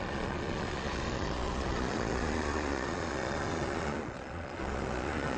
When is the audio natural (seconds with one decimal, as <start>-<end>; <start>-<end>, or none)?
none